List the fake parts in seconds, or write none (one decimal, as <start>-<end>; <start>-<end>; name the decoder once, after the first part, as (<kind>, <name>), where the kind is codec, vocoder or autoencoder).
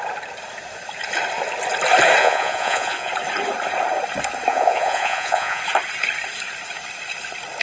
2.2-3.1 (vocoder, Vocos); 4.5-5.6